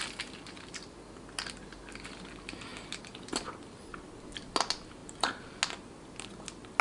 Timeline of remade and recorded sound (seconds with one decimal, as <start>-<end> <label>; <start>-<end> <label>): 0.0-6.8 recorded